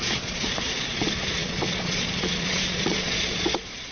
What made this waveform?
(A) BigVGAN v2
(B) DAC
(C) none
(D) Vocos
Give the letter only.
D